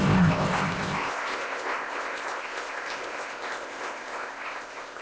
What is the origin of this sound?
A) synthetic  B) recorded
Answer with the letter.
A